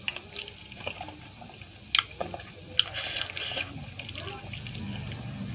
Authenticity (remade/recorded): recorded